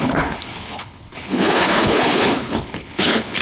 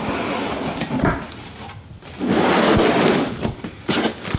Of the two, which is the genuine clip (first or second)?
second